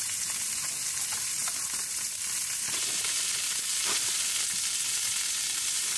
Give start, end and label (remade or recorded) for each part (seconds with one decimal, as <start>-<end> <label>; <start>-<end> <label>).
0.0-6.0 remade